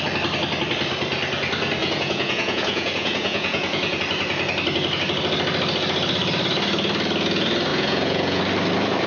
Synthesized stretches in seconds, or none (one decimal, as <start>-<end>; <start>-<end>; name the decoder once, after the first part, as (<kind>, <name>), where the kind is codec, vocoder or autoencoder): 1.8-4.0 (vocoder, Vocos); 7.7-8.4